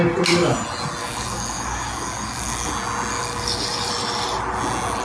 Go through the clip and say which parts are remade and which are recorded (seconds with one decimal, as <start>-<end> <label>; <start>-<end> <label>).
0.0-1.0 recorded; 1.0-2.7 remade; 2.7-3.1 recorded; 3.1-3.9 remade; 3.9-5.0 recorded